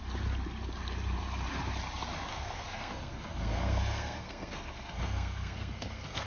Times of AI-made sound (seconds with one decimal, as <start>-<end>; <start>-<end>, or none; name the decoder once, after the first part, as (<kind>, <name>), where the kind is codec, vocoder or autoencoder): 2.3-6.3 (codec, SNAC)